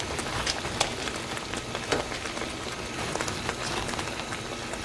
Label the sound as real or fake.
real